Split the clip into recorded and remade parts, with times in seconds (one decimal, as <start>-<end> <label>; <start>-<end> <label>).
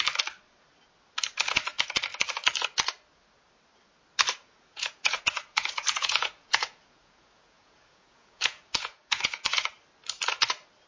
0.0-4.4 recorded; 4.4-9.7 remade; 9.7-10.9 recorded